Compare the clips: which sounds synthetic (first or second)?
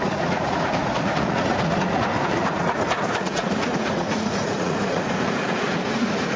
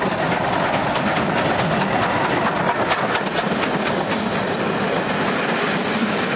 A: first